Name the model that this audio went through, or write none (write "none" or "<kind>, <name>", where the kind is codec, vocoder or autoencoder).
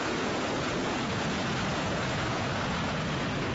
vocoder, Vocos